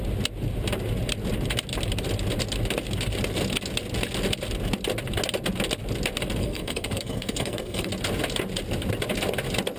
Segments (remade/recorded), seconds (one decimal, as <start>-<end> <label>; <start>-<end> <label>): 0.0-6.4 recorded; 6.4-7.9 remade; 7.9-9.8 recorded